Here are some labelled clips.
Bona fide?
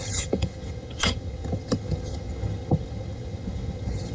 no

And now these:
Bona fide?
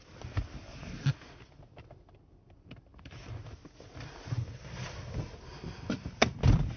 yes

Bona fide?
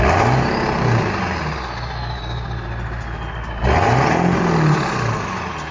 yes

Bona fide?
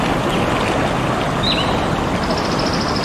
yes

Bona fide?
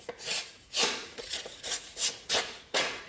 no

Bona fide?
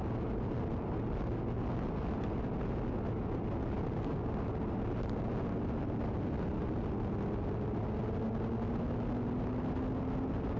yes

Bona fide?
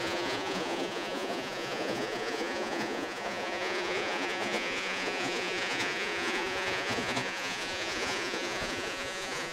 no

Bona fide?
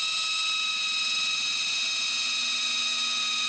yes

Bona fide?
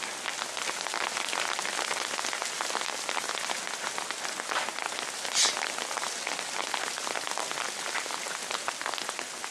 yes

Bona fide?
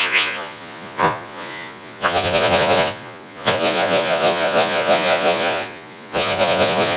no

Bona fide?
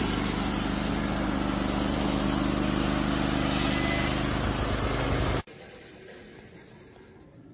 yes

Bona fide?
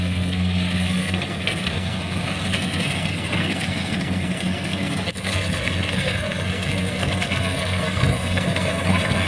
no